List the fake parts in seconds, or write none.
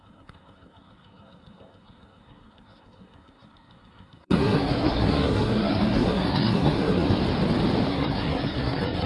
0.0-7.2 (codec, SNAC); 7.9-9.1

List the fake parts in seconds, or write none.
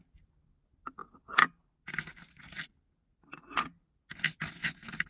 none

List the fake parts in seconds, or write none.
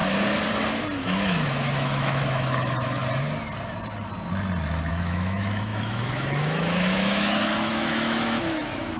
1.0-3.0 (autoencoder, DAC-VAE); 4.9-9.0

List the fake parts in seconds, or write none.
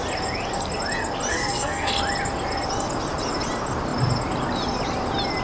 1.3-1.9 (codec, SNAC)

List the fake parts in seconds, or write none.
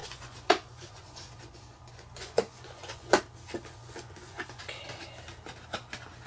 0.0-3.2 (vocoder, Vocos); 3.8-4.6